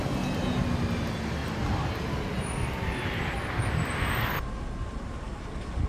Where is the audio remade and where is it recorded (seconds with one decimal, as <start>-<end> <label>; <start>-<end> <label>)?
0.0-5.9 recorded

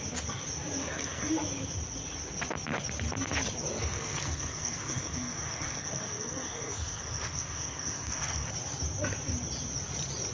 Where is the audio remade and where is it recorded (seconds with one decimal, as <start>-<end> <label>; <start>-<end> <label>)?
0.0-0.8 recorded; 0.8-1.3 remade; 1.3-3.8 recorded; 3.8-8.5 remade; 8.5-10.3 recorded